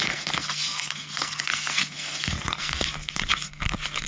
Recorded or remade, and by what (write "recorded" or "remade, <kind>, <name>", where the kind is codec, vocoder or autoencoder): remade, codec, SNAC